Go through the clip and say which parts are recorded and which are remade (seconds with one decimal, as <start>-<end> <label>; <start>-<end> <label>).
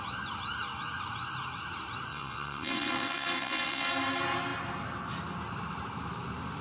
0.0-2.1 recorded; 2.1-3.9 remade; 3.9-6.6 recorded